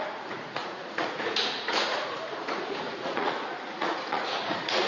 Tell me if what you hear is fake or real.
fake